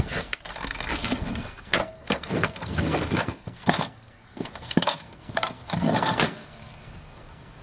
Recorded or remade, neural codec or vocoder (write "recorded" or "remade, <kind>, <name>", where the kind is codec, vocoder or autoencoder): remade, codec, SNAC